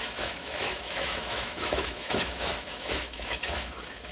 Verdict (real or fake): fake